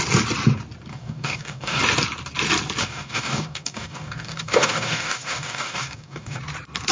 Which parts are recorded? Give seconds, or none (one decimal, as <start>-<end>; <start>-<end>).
0.0-0.9; 1.8-2.8; 6.4-6.9